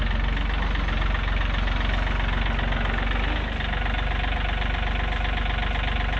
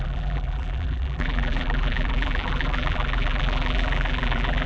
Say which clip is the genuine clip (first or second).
first